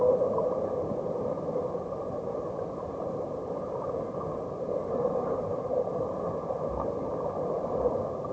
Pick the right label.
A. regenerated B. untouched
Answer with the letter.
B